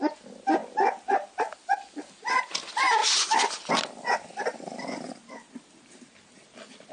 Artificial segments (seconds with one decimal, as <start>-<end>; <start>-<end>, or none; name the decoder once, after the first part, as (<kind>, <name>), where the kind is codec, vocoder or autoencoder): none